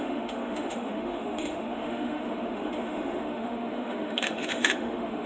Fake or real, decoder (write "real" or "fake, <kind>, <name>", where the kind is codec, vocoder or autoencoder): fake, autoencoder, DAC-VAE